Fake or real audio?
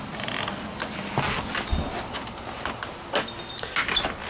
real